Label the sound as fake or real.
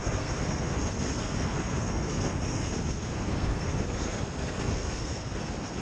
fake